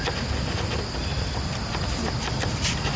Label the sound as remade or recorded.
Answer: recorded